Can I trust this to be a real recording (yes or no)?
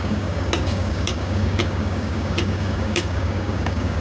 no